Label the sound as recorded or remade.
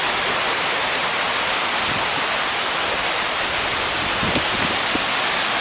recorded